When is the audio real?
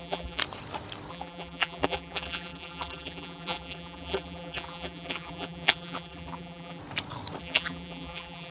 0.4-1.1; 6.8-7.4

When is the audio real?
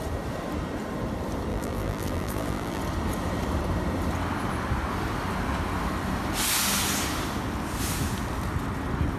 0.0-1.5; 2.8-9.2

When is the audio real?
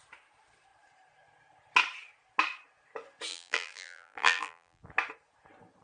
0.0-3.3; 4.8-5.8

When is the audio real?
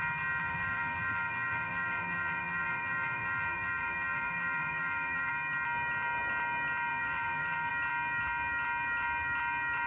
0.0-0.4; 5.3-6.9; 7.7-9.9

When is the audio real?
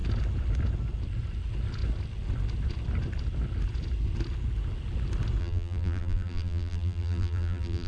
0.0-5.4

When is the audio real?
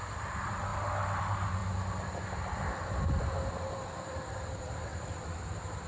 0.7-1.2; 1.6-3.7; 4.9-5.5